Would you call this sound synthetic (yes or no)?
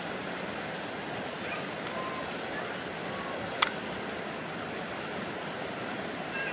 no